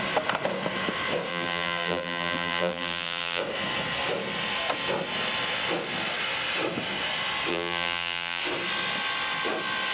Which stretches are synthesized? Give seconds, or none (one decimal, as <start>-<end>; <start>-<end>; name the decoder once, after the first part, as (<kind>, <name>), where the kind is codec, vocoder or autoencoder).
1.3-3.4 (vocoder, BigVGAN v2); 7.5-8.4